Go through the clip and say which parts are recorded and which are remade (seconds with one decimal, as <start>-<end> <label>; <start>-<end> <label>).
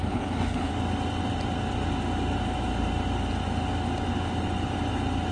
0.0-0.7 remade; 0.7-5.3 recorded